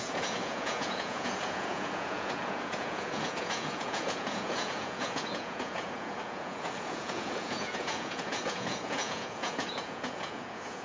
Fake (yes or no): yes